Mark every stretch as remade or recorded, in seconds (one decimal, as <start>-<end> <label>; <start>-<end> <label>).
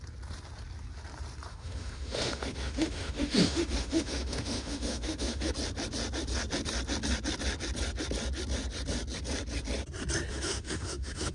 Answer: 0.0-1.5 recorded; 1.5-5.5 remade; 5.5-10.3 recorded; 10.3-11.3 remade